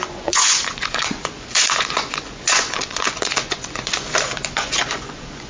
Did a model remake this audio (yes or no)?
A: yes